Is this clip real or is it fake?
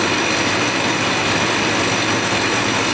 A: real